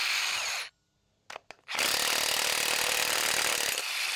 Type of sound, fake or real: real